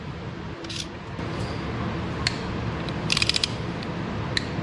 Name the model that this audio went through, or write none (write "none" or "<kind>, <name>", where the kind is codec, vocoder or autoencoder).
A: none